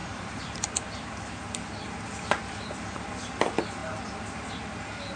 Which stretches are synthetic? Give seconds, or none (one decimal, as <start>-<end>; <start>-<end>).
0.0-3.1